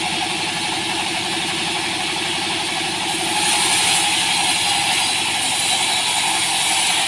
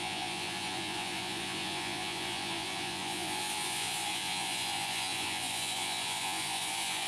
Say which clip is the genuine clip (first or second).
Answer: first